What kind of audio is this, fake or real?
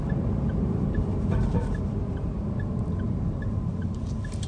real